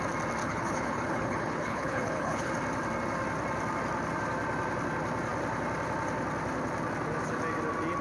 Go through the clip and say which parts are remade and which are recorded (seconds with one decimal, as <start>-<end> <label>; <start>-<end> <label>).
0.0-0.4 recorded; 0.4-2.5 remade; 2.5-8.0 recorded